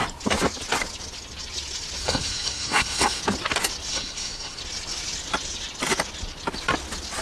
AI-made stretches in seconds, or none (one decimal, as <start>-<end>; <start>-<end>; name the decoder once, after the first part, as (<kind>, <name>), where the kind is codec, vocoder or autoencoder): 2.0-3.2 (codec, SNAC); 3.9-4.6